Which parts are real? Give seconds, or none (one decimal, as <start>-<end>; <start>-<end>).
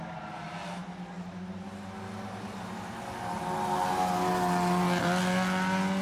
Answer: 0.0-6.0